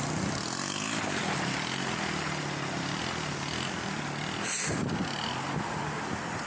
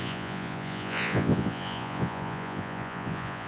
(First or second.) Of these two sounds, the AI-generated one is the second